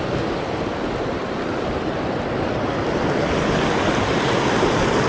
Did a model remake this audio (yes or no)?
no